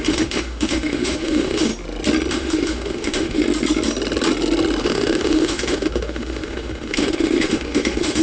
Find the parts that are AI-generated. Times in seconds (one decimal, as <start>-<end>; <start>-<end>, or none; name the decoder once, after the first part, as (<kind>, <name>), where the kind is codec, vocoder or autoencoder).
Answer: 0.0-1.7 (autoencoder, DAC-VAE); 2.3-3.4; 4.8-8.2